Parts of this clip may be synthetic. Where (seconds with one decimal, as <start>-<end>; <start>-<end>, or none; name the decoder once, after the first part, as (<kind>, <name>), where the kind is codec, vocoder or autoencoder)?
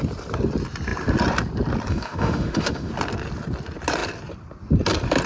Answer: 1.9-2.9 (autoencoder, DAC-VAE)